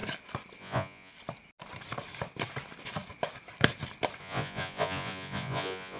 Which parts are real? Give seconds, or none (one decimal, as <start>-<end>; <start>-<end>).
0.0-0.6; 1.1-4.2